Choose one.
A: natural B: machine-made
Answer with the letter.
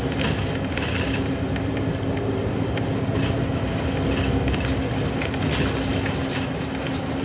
A